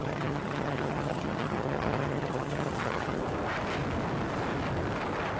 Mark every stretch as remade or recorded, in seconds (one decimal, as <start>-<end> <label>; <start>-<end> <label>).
0.0-3.2 remade; 3.2-5.4 recorded

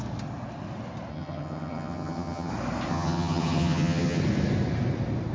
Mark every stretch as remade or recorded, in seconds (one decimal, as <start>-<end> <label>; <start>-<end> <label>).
0.0-1.1 recorded; 1.1-2.5 remade; 2.5-2.9 recorded; 2.9-4.2 remade; 4.2-5.3 recorded